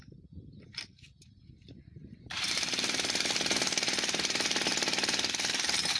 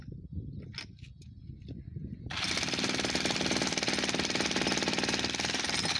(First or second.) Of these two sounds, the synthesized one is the first